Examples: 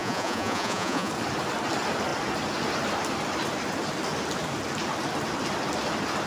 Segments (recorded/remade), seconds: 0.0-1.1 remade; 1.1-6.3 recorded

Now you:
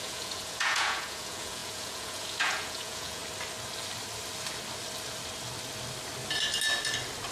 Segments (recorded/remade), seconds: 0.0-3.2 remade; 3.2-7.3 recorded